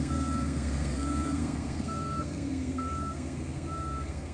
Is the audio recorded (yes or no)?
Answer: no